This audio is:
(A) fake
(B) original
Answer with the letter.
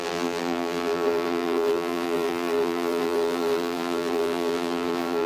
A